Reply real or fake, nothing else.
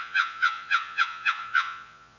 fake